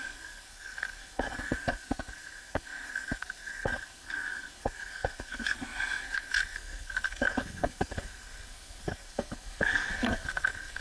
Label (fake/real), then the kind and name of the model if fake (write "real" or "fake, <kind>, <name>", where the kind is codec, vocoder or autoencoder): fake, codec, SNAC